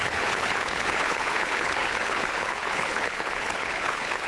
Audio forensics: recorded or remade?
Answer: remade